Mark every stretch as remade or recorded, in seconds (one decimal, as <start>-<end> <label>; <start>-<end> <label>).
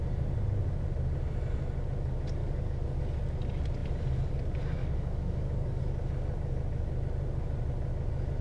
0.0-2.4 recorded; 2.4-3.0 remade; 3.0-4.8 recorded; 4.8-5.8 remade; 5.8-8.4 recorded